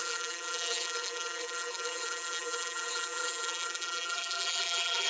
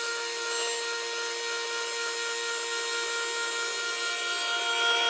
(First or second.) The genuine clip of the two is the second